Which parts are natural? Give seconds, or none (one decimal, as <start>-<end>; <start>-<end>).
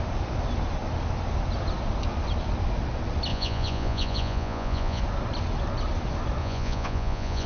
0.0-3.3; 5.0-6.4